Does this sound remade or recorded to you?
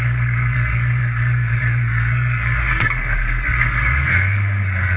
remade